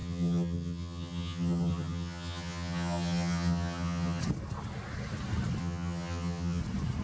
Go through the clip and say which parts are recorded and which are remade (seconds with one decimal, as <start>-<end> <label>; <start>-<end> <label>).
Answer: 0.0-4.2 remade; 4.2-5.6 recorded; 5.6-6.6 remade; 6.6-7.0 recorded